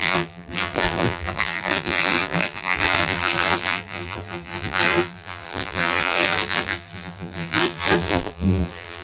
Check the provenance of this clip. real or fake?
fake